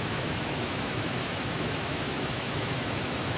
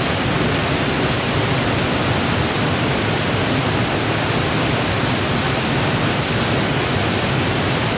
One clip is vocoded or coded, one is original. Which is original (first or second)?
second